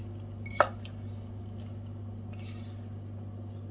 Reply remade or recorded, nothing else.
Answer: recorded